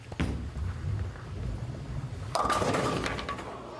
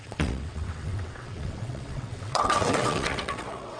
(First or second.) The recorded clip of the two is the first